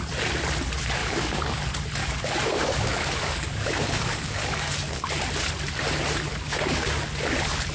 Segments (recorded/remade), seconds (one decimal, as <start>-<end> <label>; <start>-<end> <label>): 0.0-1.0 recorded; 1.0-1.6 remade; 1.6-2.0 recorded; 2.0-5.1 remade; 5.1-6.3 recorded; 6.3-7.1 remade; 7.1-7.7 recorded